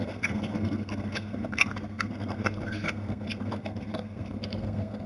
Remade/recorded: remade